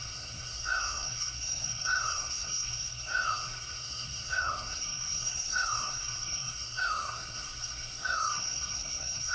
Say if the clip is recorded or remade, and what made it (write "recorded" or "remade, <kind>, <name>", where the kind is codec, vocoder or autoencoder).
remade, codec, SNAC